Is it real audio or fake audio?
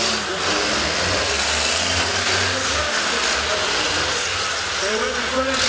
real